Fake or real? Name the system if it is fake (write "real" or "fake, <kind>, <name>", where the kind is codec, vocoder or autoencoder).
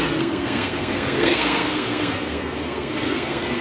fake, codec, SNAC